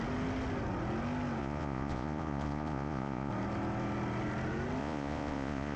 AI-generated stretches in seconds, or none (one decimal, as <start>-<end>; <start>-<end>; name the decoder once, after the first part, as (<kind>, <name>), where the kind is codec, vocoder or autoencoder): 1.4-3.3 (vocoder, Vocos); 4.8-5.8

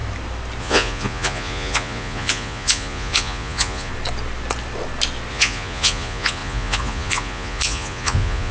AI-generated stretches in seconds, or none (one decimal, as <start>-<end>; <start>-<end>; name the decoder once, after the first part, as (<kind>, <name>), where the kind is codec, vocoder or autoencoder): 0.6-3.9 (vocoder, Vocos); 5.3-8.5

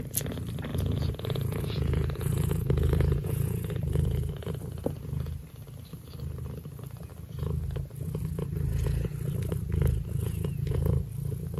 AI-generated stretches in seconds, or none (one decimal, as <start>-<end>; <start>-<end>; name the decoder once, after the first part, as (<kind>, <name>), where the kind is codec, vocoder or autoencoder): 0.7-4.3 (vocoder, Vocos); 10.2-10.9

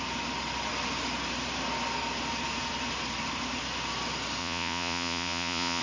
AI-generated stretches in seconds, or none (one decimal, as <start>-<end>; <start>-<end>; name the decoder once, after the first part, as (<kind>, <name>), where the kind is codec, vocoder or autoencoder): 4.4-5.8 (vocoder, Vocos)

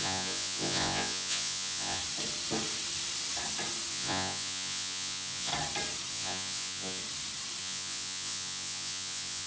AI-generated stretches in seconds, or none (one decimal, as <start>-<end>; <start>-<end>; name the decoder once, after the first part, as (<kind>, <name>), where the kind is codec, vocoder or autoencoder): 0.0-2.0 (vocoder, Vocos); 3.9-5.5; 6.1-7.0; 7.6-9.5

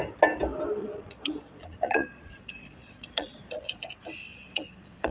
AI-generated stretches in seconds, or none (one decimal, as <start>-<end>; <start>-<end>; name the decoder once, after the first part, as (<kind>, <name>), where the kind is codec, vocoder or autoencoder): 0.8-3.9 (vocoder, Vocos); 4.3-5.1